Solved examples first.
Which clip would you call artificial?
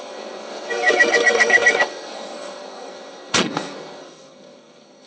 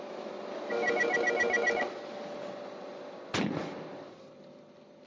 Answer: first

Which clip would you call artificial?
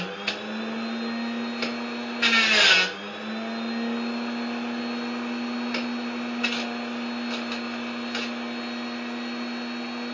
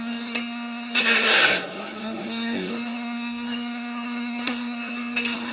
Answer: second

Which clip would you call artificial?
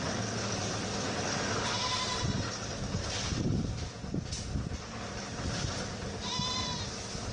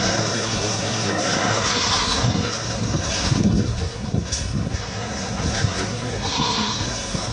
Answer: second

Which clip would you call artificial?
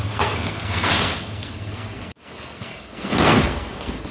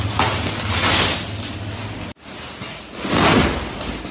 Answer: first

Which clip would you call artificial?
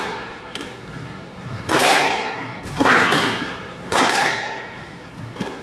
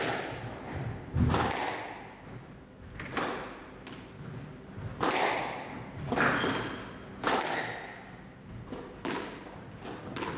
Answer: first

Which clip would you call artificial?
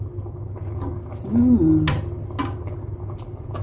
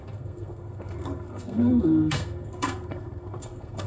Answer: second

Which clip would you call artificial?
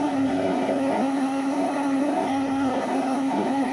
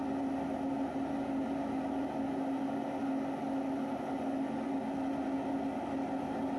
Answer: first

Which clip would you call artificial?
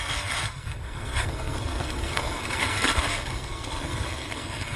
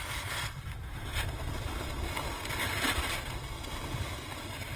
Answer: first